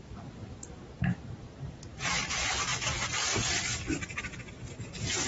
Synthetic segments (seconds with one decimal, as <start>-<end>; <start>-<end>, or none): 2.7-4.5